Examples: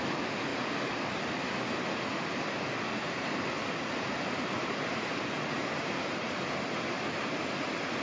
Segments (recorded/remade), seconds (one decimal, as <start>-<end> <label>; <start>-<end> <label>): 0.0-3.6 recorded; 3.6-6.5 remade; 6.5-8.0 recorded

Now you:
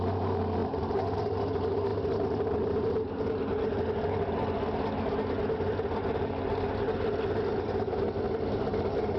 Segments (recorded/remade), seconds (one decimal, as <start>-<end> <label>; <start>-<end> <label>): 0.0-0.6 recorded; 0.6-1.2 remade; 1.2-9.2 recorded

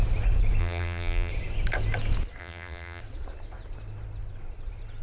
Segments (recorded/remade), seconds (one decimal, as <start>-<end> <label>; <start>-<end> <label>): 0.0-0.6 recorded; 0.6-1.3 remade; 1.3-2.4 recorded; 2.4-3.0 remade; 3.0-5.0 recorded

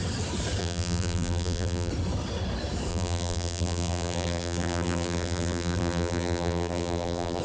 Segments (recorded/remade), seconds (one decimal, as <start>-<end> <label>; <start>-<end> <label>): 0.0-0.6 recorded; 0.6-1.9 remade; 1.9-2.9 recorded; 2.9-7.4 remade

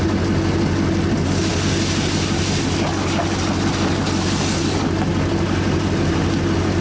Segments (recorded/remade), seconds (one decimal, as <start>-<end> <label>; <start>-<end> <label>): 0.0-6.8 recorded

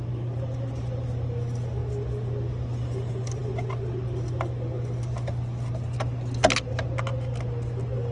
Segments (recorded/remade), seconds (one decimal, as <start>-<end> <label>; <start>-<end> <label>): 0.0-8.1 recorded

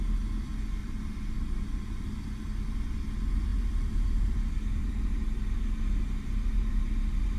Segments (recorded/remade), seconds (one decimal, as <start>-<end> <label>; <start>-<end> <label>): 0.0-0.8 recorded; 0.8-2.0 remade; 2.0-3.5 recorded; 3.5-7.4 remade

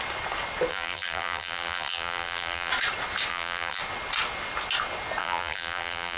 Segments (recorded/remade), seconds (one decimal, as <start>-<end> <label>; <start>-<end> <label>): 0.0-0.7 recorded; 0.7-2.7 remade; 2.7-3.3 recorded; 3.3-3.8 remade; 3.8-5.2 recorded; 5.2-6.2 remade